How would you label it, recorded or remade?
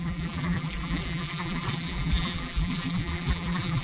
remade